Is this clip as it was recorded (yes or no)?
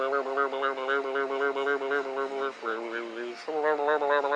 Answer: yes